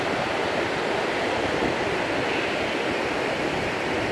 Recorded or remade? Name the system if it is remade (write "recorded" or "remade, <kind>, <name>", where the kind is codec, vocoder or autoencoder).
recorded